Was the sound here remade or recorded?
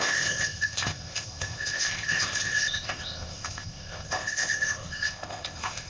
remade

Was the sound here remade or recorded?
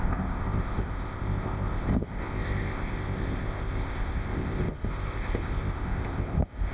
remade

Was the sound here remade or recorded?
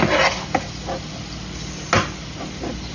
recorded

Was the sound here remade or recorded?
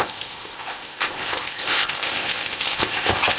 remade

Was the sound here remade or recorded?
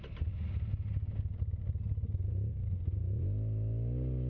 recorded